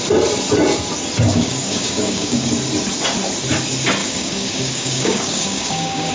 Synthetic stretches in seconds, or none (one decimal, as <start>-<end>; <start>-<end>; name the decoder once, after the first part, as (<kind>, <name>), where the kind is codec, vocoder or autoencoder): 1.3-2.5 (codec, DAC); 4.0-6.1